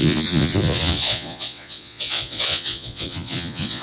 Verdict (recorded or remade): remade